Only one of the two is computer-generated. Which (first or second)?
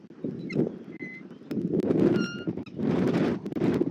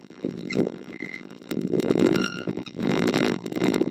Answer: second